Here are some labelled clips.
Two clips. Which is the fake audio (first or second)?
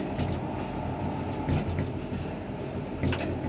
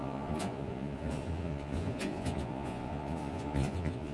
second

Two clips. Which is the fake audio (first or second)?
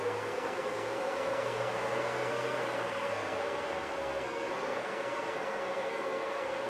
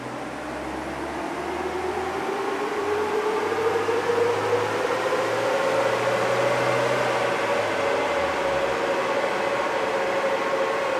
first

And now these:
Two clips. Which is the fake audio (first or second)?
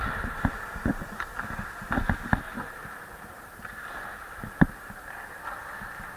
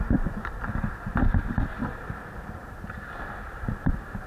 second